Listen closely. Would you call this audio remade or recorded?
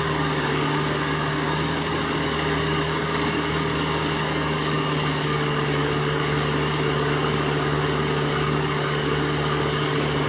remade